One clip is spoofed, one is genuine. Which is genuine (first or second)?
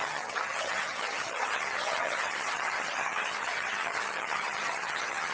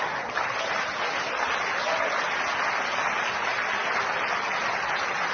second